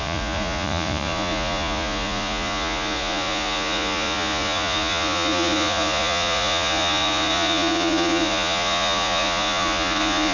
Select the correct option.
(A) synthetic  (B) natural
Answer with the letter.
A